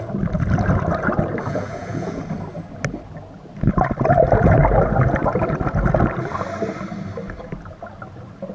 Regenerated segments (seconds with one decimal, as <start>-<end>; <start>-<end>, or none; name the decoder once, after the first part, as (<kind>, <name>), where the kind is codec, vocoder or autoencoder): 1.5-2.2 (vocoder, Vocos)

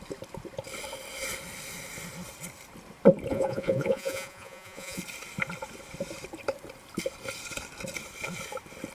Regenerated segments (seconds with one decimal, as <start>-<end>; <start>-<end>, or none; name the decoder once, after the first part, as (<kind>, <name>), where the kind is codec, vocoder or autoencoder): 3.3-5.0 (vocoder, Vocos)